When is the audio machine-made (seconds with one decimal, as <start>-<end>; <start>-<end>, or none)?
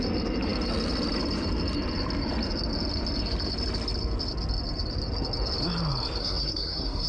6.2-7.1